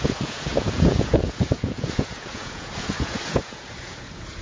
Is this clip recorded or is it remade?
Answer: remade